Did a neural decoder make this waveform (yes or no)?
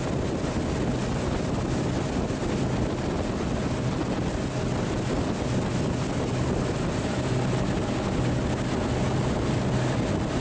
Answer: no